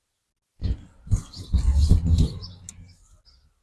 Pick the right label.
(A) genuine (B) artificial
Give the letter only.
A